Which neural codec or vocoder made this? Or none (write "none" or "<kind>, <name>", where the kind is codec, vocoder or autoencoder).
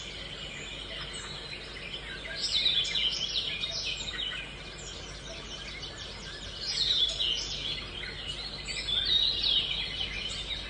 none